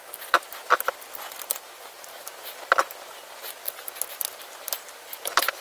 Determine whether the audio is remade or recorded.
recorded